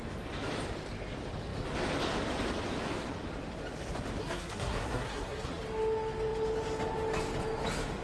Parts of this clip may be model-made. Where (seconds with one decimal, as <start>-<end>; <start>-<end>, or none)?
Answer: 4.2-5.6